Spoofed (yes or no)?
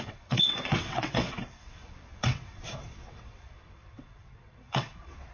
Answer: yes